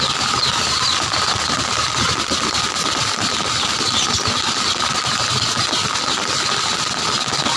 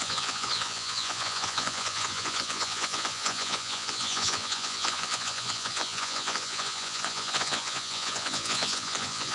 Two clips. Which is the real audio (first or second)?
first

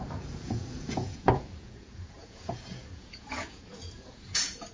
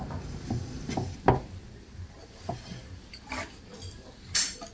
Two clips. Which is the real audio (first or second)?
second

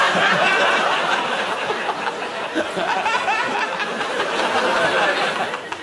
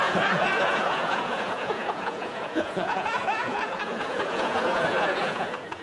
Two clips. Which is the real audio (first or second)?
first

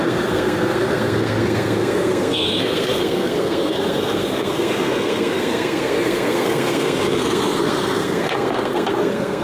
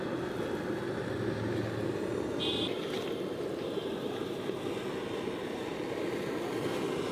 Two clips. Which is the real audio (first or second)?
second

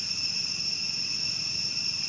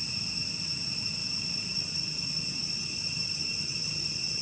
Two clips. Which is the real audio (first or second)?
second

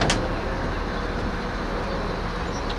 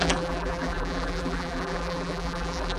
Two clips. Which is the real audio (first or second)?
first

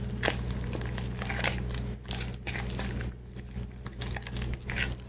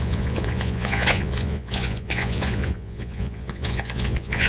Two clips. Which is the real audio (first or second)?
first